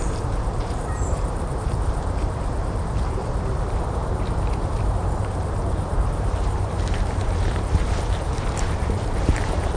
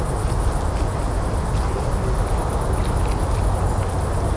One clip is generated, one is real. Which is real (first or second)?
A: second